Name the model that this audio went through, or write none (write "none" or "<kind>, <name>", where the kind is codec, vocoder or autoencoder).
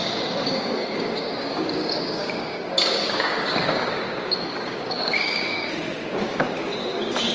codec, DAC